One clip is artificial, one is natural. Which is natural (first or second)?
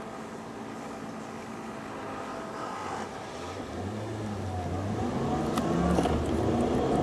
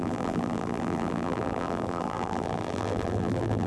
first